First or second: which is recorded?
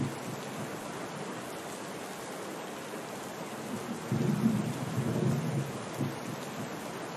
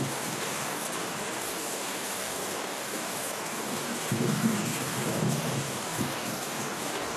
first